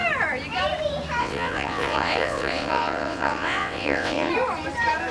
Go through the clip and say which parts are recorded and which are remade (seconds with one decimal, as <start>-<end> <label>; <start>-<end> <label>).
0.0-1.2 recorded; 1.2-4.3 remade; 4.3-5.1 recorded

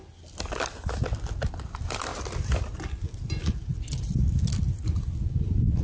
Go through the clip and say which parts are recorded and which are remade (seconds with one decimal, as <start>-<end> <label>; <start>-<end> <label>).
0.0-5.8 recorded

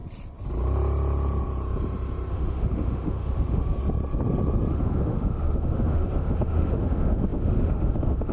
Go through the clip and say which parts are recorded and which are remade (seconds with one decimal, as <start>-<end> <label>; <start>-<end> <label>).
0.0-2.3 recorded; 2.3-3.8 remade; 3.8-4.7 recorded; 4.7-8.3 remade

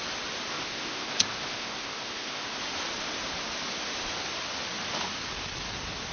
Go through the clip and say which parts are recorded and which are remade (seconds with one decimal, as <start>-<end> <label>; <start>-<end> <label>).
0.0-0.5 recorded; 0.5-2.6 remade; 2.6-6.1 recorded

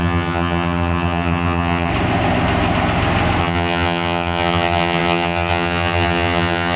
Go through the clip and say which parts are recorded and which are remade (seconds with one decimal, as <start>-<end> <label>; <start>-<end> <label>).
0.0-1.9 remade; 1.9-3.4 recorded; 3.4-6.8 remade

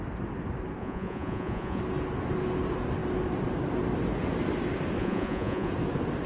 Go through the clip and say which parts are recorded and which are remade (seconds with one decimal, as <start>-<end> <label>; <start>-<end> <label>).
0.0-0.8 recorded; 0.8-1.8 remade; 1.8-5.0 recorded; 5.0-5.7 remade; 5.7-6.3 recorded